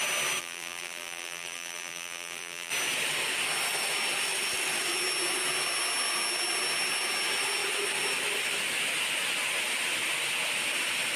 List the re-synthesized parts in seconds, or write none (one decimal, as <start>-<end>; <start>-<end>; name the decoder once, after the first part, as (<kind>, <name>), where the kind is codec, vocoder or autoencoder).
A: 0.4-2.7 (vocoder, BigVGAN v2)